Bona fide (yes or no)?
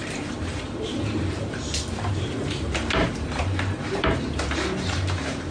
no